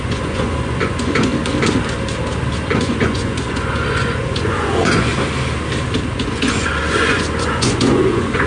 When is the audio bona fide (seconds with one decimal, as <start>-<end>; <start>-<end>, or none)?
1.3-2.8; 5.1-6.1